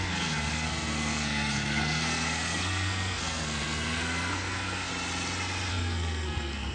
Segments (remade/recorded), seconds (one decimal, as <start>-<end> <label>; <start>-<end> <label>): 0.0-4.9 remade; 4.9-5.7 recorded; 5.7-6.7 remade